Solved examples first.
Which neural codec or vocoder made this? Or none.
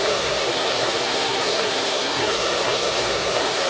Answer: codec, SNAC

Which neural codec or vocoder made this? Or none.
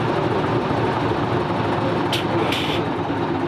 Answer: none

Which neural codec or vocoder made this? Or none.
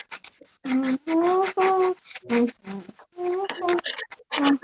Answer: none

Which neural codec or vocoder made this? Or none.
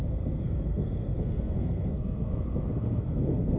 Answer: codec, SNAC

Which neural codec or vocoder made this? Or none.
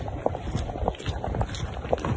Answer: none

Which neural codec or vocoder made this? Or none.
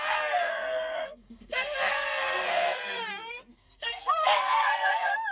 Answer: codec, SNAC